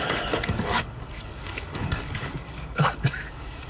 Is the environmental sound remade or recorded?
remade